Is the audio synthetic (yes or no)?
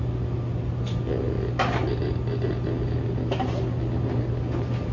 no